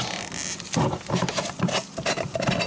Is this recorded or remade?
recorded